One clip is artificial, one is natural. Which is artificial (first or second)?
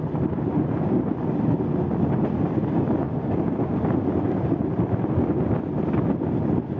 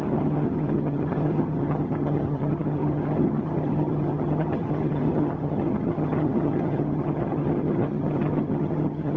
second